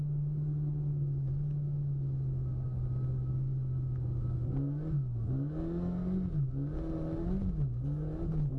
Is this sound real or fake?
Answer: real